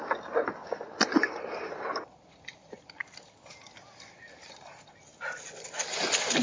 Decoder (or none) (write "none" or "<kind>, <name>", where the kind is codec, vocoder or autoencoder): none